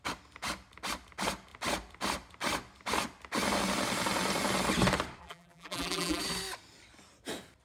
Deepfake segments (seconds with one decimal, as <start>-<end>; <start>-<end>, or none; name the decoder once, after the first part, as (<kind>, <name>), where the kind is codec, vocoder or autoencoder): 5.2-6.2 (vocoder, BigVGAN v2)